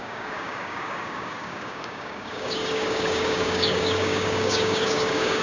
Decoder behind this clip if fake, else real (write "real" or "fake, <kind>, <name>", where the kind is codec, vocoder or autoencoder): fake, codec, DAC